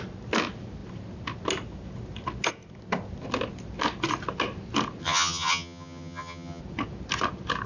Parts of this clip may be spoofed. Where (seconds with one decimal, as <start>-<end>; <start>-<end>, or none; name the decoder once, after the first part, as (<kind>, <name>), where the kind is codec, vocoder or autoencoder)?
5.0-6.6 (vocoder, HiFi-GAN)